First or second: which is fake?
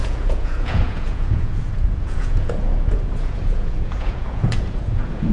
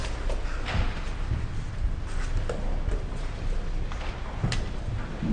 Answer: first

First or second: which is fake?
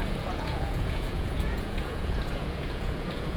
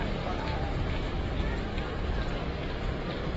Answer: first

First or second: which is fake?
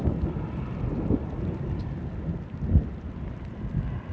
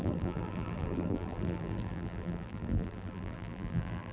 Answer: second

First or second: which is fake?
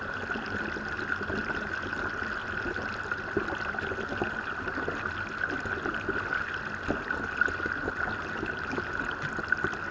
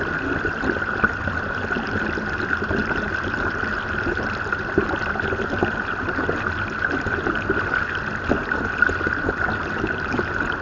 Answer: second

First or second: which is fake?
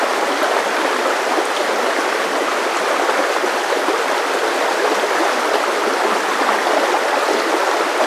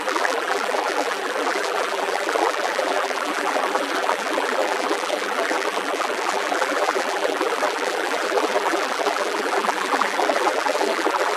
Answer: second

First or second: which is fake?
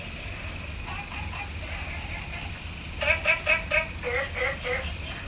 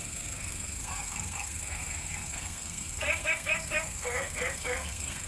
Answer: second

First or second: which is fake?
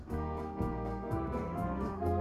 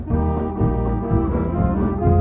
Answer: first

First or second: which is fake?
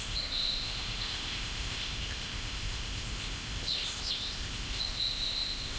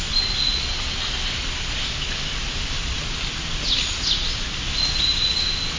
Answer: first